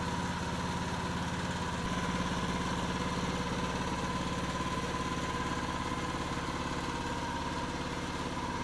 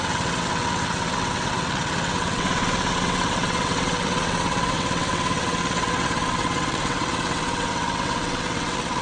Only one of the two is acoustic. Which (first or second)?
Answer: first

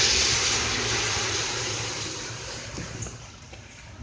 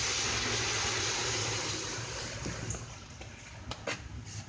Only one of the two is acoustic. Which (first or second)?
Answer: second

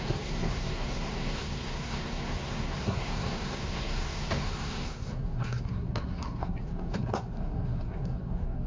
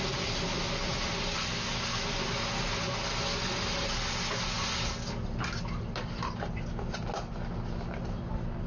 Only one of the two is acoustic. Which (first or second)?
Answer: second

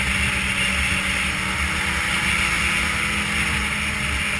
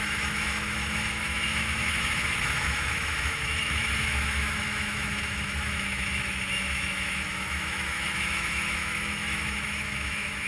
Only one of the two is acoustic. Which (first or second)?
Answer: first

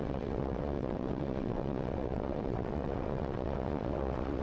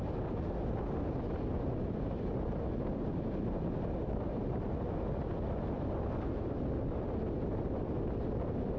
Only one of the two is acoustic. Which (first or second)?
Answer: second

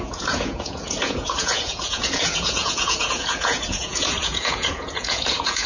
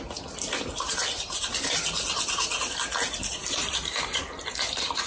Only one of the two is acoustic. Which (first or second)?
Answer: second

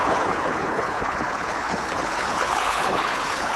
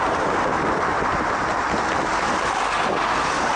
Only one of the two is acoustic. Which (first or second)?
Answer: second